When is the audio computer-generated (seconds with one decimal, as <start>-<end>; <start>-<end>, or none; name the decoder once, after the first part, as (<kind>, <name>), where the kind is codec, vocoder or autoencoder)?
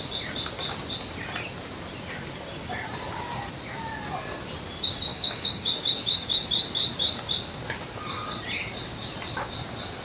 5.1-6.5 (codec, DAC)